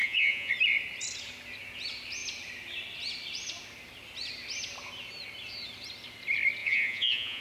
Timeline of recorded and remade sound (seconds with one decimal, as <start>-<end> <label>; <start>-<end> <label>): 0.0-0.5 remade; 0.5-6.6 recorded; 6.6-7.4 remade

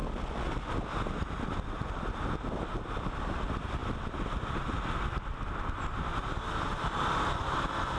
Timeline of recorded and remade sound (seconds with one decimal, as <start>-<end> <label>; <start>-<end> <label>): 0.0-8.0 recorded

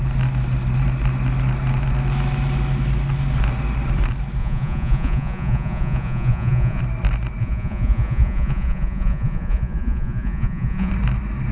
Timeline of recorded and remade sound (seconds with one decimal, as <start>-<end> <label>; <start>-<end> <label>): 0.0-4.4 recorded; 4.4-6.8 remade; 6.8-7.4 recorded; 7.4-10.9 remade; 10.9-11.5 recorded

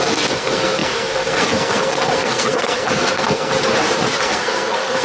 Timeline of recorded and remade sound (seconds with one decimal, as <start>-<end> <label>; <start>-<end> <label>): 0.0-3.5 remade; 3.5-4.2 recorded; 4.2-5.0 remade

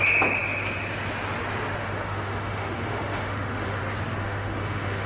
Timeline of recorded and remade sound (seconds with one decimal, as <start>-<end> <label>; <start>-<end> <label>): 0.0-1.8 recorded; 1.8-3.8 remade; 3.8-4.2 recorded; 4.2-5.1 remade

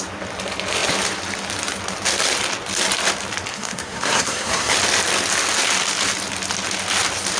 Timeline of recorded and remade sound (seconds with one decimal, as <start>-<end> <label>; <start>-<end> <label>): 0.0-3.5 recorded; 3.5-4.7 remade; 4.7-7.4 recorded

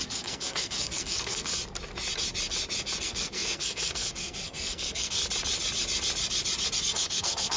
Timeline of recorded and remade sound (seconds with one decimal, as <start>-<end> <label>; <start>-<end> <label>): 0.0-1.5 remade; 1.5-3.0 recorded; 3.0-5.2 remade; 5.2-6.8 recorded; 6.8-7.6 remade

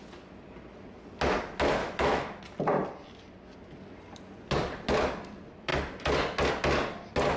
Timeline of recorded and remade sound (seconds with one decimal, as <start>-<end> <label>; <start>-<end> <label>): 0.0-1.8 recorded; 1.8-2.4 remade; 2.4-7.4 recorded